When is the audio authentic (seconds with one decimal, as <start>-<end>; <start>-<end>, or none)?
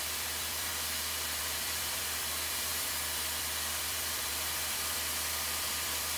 0.7-1.4